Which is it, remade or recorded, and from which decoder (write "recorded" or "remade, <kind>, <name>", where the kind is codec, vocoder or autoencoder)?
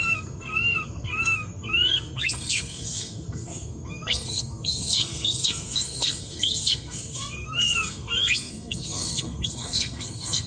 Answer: remade, codec, SNAC